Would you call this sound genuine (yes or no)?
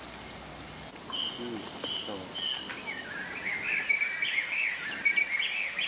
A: yes